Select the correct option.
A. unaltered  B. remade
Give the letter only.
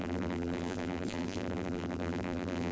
B